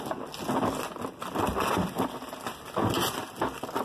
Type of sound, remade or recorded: recorded